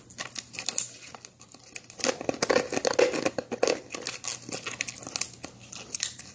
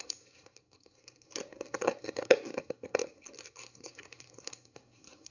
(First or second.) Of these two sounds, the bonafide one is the first